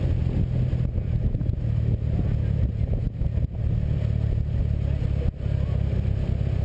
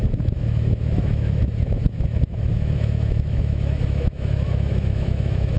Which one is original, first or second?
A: first